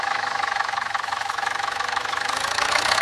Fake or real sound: fake